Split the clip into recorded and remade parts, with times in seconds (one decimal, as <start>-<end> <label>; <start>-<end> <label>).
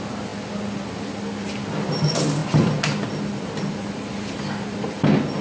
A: 0.0-5.4 recorded